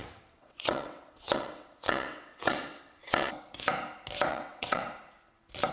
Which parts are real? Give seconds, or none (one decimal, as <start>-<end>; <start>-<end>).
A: 3.4-4.3; 4.8-5.7